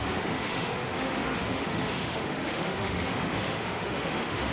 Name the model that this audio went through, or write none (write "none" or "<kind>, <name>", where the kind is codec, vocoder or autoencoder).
autoencoder, DAC-VAE